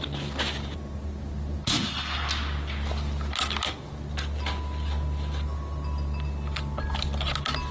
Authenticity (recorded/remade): recorded